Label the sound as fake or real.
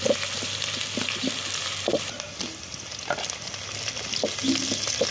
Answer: real